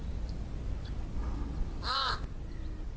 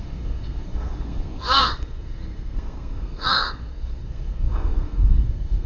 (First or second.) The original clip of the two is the first